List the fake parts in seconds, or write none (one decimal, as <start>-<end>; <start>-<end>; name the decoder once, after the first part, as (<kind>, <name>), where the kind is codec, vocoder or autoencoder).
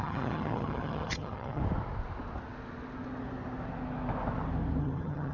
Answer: 0.0-1.6 (vocoder, HiFi-GAN); 4.8-5.3